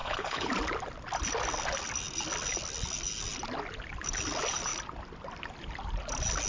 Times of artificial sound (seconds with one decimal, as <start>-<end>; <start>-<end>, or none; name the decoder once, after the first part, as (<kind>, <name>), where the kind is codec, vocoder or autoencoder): 0.0-0.5 (codec, HILCodec)

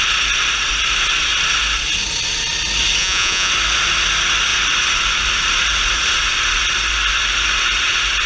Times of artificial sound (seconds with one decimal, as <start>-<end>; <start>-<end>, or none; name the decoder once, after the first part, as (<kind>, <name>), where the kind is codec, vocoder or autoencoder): 3.0-3.5 (vocoder, Vocos)

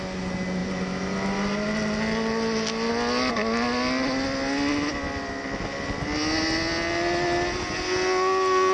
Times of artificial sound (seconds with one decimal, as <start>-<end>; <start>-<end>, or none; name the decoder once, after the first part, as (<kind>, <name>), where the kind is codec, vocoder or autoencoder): none

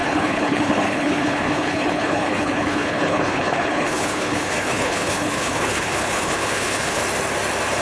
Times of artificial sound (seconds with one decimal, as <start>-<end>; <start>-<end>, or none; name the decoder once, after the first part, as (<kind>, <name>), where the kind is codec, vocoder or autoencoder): 0.0-7.0 (codec, HILCodec)

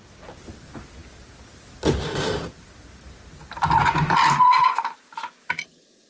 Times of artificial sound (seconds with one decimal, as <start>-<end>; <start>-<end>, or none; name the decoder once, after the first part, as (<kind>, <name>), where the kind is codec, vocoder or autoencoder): none

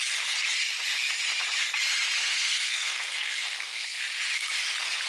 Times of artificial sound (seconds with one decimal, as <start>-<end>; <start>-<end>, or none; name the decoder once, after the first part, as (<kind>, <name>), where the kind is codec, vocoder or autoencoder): 2.2-4.0 (codec, SNAC)

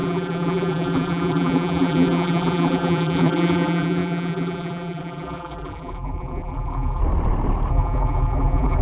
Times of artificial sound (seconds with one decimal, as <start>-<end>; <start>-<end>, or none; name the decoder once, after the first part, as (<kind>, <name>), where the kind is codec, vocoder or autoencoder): 0.0-7.0 (vocoder, BigVGAN v2); 7.7-8.8

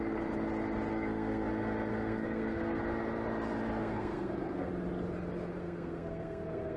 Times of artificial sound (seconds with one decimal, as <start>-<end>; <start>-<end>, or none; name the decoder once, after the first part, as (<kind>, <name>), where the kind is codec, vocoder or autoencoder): 0.9-1.5 (codec, SNAC); 1.9-2.8; 3.8-4.7; 5.6-6.8